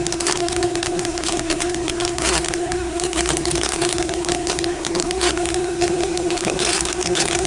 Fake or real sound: fake